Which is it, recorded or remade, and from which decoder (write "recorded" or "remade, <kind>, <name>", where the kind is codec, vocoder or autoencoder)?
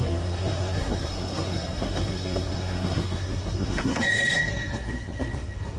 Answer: remade, codec, SNAC